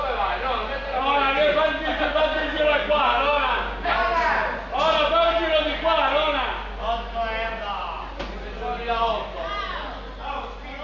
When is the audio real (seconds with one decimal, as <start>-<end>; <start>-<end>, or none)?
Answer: 0.0-2.3; 3.9-10.8

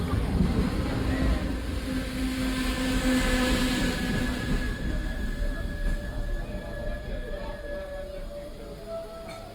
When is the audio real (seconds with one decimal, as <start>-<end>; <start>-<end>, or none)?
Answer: 0.0-9.5

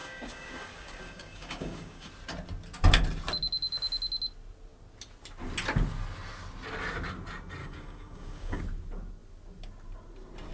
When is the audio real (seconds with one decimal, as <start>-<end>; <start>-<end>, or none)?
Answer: 2.1-7.6; 8.6-10.5

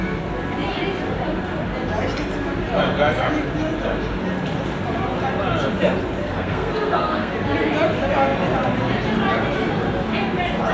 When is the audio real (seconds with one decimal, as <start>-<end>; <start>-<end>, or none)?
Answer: 0.0-6.2; 7.3-10.7

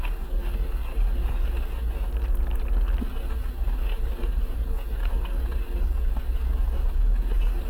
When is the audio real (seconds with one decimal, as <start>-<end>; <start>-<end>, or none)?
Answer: 2.1-3.0

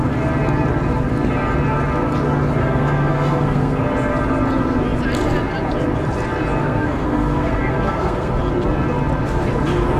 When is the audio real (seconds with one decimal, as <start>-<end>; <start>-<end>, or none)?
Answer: 0.0-2.6; 3.8-6.6; 8.3-10.0